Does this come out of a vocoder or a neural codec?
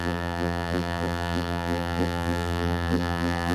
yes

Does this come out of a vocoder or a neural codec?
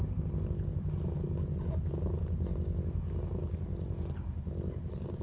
no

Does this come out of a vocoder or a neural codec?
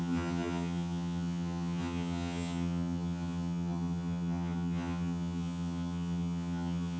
yes